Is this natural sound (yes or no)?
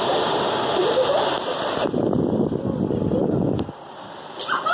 yes